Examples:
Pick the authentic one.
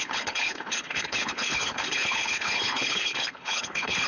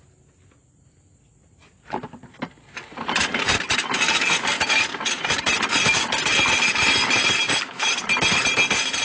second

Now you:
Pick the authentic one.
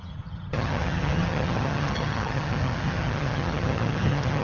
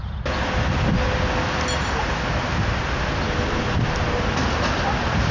second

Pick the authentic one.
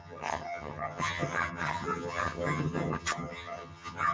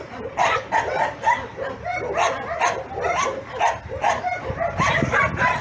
second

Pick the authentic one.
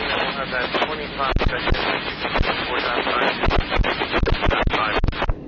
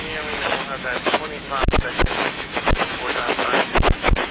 first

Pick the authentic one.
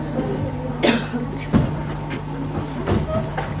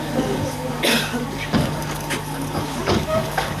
first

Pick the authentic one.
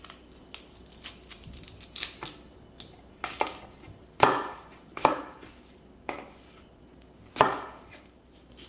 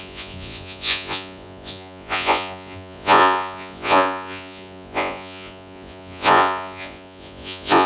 first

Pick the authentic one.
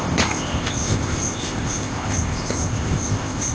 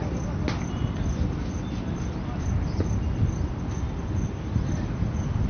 second